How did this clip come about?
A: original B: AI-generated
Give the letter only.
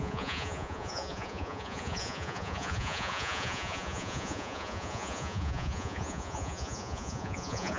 B